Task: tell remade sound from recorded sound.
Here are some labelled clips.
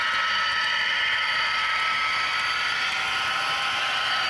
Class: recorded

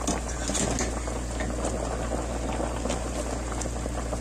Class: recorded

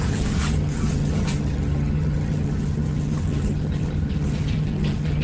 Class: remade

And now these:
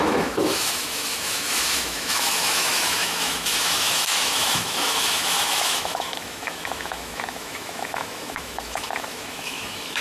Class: remade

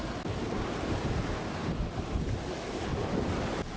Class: recorded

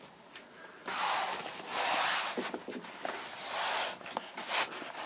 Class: recorded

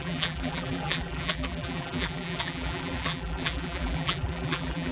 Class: remade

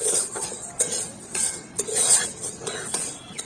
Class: remade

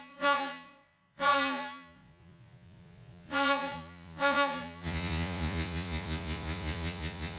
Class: remade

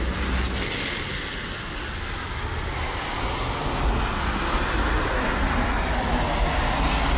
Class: recorded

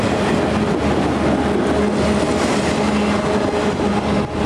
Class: recorded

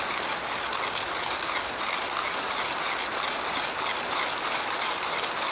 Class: recorded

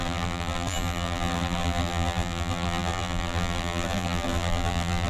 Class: remade